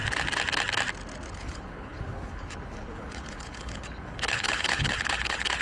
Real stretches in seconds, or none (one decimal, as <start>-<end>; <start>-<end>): 0.0-1.3